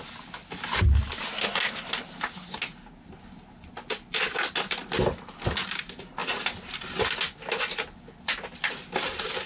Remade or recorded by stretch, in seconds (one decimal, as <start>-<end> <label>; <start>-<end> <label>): 0.0-4.8 recorded; 4.8-5.8 remade; 5.8-6.2 recorded; 6.2-7.1 remade; 7.1-9.5 recorded